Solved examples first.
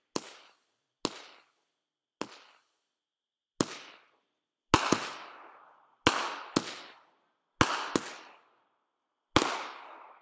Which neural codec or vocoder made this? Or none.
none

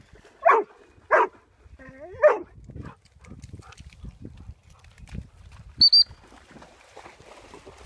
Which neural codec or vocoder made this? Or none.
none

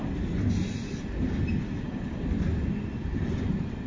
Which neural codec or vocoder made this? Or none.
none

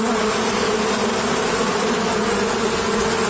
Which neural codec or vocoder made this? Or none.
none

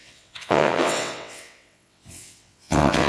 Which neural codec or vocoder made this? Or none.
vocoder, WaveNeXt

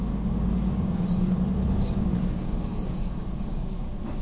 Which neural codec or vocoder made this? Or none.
codec, DAC